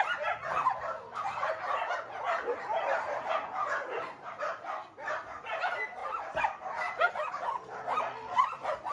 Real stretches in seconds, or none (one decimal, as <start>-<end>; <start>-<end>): 0.0-3.9; 4.7-6.0; 6.6-8.9